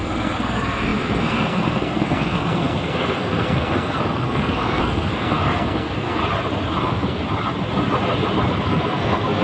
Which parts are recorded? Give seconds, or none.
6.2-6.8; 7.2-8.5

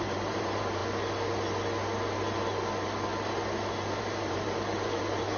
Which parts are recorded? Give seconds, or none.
0.8-4.0

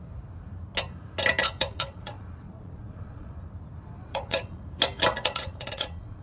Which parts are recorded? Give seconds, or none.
0.0-1.4; 3.3-4.0; 4.6-5.1